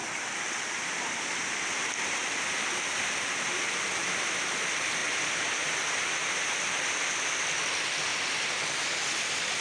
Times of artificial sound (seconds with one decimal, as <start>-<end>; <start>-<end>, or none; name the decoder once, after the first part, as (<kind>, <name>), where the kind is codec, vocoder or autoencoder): none